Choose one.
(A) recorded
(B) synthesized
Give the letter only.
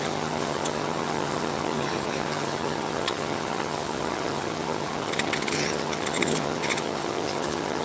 B